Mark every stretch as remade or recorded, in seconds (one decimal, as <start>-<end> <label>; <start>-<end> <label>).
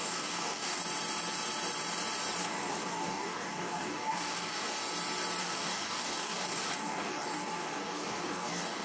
0.0-0.8 remade; 0.8-2.4 recorded; 2.4-4.8 remade; 4.8-5.4 recorded; 5.4-8.8 remade